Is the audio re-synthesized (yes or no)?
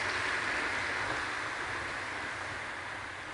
no